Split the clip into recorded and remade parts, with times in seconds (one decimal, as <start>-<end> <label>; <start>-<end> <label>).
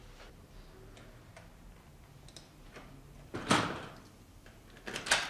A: 0.0-5.3 recorded